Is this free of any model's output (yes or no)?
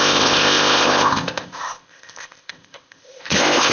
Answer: no